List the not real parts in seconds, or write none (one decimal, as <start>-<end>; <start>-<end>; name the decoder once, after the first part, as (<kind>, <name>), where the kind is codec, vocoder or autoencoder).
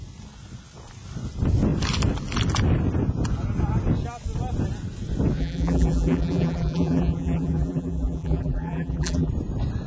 5.4-9.3 (vocoder, BigVGAN v2)